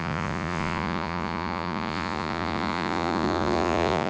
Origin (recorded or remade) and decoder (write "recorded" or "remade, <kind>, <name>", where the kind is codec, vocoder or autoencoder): remade, vocoder, Vocos